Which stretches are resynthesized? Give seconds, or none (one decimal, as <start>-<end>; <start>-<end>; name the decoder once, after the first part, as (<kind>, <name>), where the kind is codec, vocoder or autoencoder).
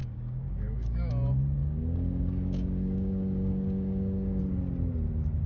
0.0-1.1 (codec, DAC); 1.6-4.4